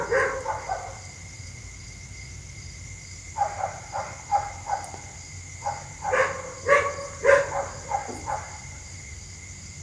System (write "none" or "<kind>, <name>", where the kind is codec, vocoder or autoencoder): none